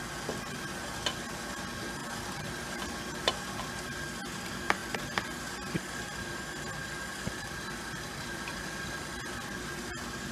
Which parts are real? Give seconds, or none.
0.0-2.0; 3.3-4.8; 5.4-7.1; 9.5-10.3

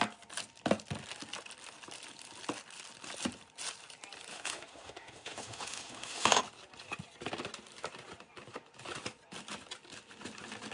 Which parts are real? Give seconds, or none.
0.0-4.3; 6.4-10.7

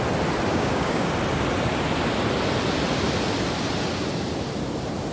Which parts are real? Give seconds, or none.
0.0-0.5; 1.1-5.1

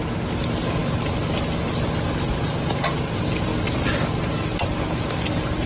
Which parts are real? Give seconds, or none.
0.0-5.7

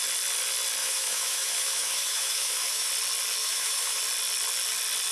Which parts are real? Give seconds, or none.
0.0-0.8; 2.9-3.4; 4.0-5.1